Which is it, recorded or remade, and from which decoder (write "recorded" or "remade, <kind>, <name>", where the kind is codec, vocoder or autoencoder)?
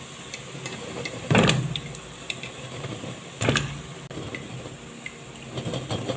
recorded